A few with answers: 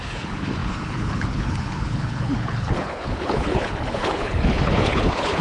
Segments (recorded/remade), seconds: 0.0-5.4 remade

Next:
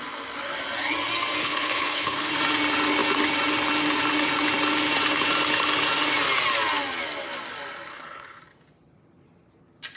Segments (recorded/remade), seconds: 0.0-1.4 recorded; 1.4-2.3 remade; 2.3-7.9 recorded; 7.9-8.4 remade; 8.4-10.0 recorded